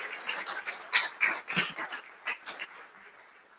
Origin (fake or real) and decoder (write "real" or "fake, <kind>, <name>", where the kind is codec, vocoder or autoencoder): real